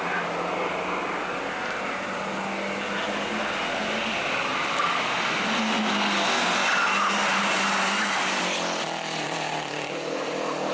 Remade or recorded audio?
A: recorded